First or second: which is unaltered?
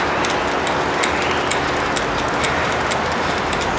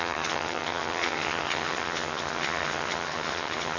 first